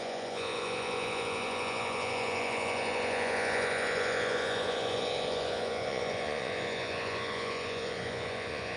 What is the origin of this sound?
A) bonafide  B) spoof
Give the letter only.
B